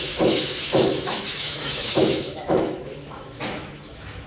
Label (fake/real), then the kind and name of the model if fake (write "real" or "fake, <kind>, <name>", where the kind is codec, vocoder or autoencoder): fake, autoencoder, DAC-VAE